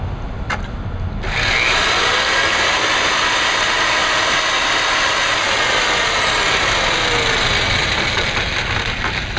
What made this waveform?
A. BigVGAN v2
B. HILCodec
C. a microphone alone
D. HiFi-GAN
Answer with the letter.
C